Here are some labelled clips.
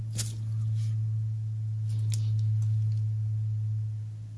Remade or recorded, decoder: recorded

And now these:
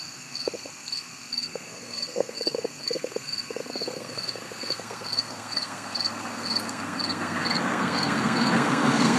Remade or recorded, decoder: remade, codec, SNAC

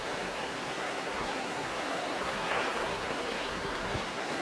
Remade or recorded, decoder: remade, codec, SNAC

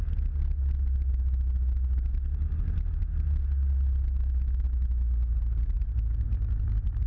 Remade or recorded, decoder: recorded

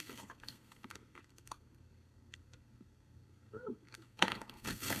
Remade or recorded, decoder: remade, codec, SNAC